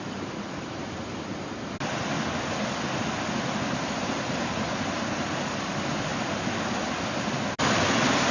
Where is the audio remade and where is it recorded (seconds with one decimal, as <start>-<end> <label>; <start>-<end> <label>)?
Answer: 0.0-8.3 recorded